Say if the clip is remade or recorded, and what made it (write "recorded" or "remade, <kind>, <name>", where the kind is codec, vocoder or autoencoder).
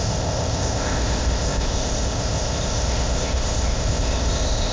remade, codec, ZipCodec